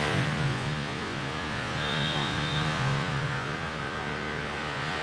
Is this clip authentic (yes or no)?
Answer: no